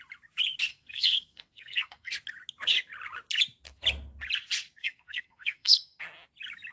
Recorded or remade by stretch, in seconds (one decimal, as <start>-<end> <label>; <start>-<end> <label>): 0.0-0.7 recorded; 0.7-2.1 remade; 2.1-4.8 recorded; 4.8-6.0 remade; 6.0-6.7 recorded